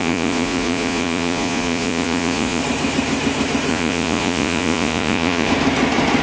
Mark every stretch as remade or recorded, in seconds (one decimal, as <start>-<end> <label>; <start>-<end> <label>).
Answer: 0.0-2.6 remade; 2.6-3.7 recorded; 3.7-5.5 remade; 5.5-6.2 recorded